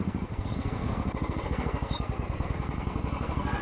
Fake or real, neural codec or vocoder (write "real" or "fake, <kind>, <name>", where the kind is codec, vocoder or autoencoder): fake, codec, SNAC